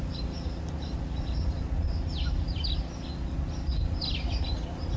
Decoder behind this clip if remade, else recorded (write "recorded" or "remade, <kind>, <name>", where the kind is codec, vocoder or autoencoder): recorded